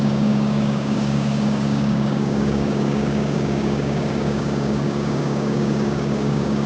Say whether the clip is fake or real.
fake